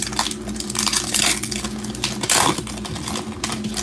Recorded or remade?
recorded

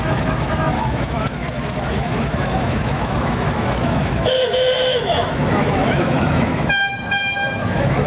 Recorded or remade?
remade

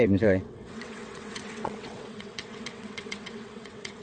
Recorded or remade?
remade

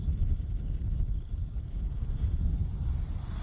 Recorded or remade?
recorded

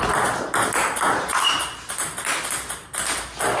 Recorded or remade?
recorded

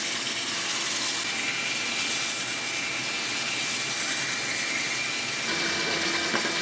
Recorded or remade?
recorded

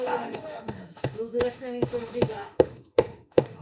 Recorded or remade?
remade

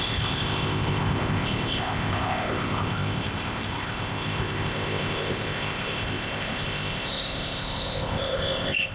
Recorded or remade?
remade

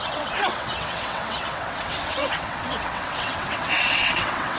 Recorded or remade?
remade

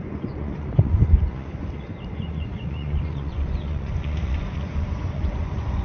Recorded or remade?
remade